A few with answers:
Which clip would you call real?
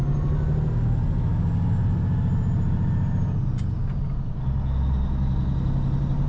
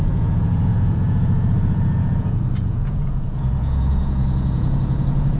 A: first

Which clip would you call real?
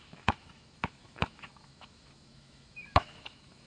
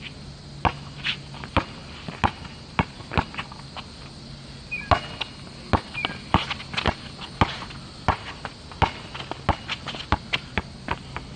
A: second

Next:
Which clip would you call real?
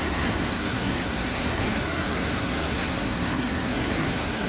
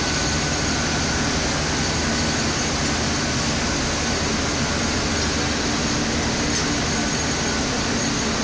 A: second